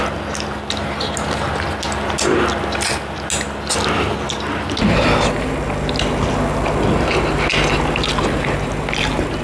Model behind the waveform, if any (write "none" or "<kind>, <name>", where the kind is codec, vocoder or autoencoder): none